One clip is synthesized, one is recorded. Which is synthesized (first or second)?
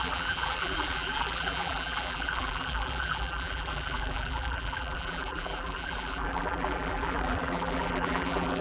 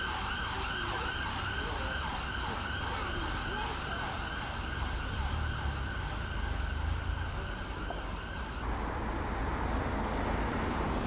first